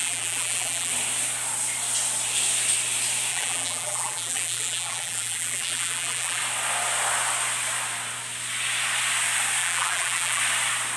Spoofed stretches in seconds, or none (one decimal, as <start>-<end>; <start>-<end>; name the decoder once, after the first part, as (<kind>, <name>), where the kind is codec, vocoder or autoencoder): 0.0-0.9 (vocoder, BigVGAN v2); 3.3-6.4; 9.6-10.4